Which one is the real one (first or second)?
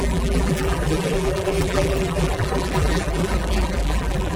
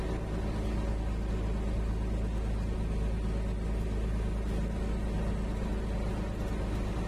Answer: second